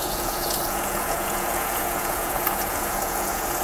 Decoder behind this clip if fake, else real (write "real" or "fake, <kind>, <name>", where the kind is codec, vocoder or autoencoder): fake, vocoder, Vocos